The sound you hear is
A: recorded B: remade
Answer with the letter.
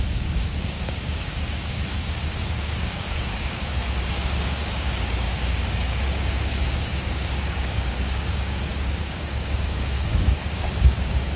B